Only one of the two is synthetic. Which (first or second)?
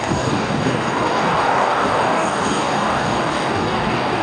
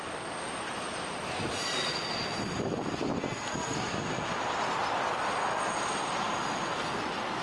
first